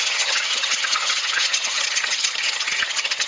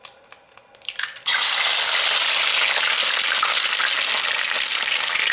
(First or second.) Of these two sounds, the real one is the second